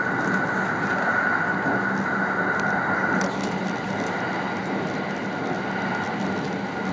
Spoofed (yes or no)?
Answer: no